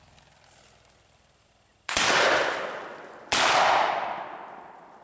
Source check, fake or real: real